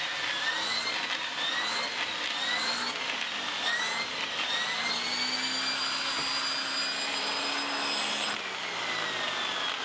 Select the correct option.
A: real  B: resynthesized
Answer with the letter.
A